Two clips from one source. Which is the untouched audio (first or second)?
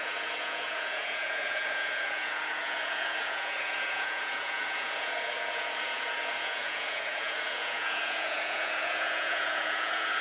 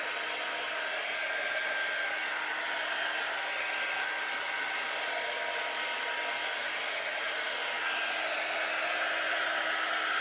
second